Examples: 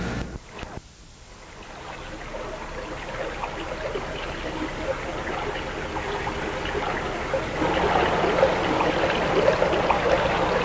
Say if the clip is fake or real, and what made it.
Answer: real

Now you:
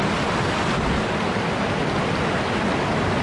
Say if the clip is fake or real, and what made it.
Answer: real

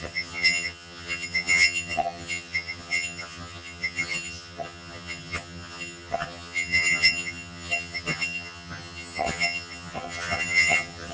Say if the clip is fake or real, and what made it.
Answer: fake, vocoder, HiFi-GAN